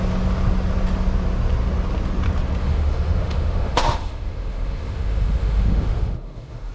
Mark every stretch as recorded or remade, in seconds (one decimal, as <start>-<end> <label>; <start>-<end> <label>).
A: 0.0-2.6 recorded; 2.6-6.7 remade